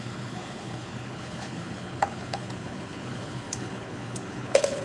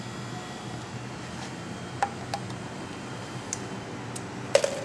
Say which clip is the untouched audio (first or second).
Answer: second